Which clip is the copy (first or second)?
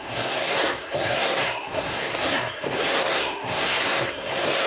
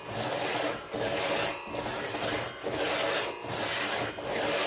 first